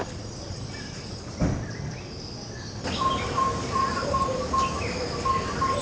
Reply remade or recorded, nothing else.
remade